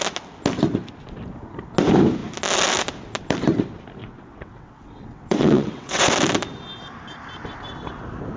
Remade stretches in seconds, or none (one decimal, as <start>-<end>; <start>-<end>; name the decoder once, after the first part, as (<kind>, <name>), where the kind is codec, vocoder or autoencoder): 4.0-6.1 (vocoder, WaveNeXt)